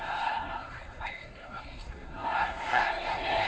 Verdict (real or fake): fake